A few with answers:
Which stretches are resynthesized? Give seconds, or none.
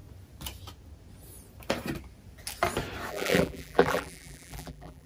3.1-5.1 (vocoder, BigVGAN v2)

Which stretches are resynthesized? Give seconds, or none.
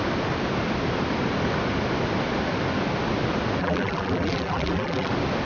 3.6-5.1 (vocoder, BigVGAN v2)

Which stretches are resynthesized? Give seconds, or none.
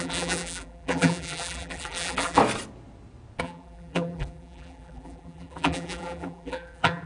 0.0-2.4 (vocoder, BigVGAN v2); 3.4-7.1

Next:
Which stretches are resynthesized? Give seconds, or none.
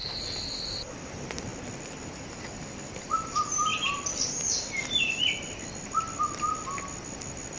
1.0-1.5 (vocoder, BigVGAN v2); 2.4-7.6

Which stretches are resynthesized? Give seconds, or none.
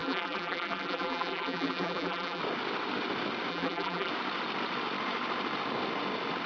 0.0-2.4 (vocoder, BigVGAN v2); 3.5-4.1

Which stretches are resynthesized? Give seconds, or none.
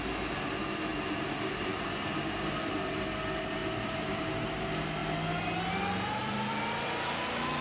0.9-1.7 (vocoder, BigVGAN v2); 3.6-4.3; 6.2-7.0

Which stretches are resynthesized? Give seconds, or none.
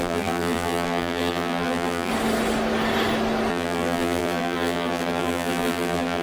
0.0-2.1 (vocoder, BigVGAN v2); 3.5-6.2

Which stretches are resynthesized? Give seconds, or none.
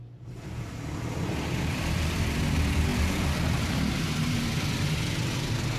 0.0-5.8 (vocoder, BigVGAN v2)